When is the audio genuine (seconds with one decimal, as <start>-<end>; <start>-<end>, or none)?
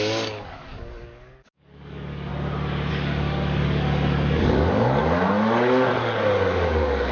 2.3-2.9